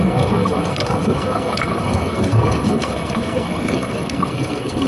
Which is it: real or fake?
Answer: fake